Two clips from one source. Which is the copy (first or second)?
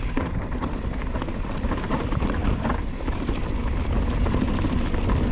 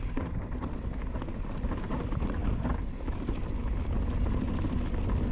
first